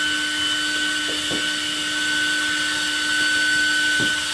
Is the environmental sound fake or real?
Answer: real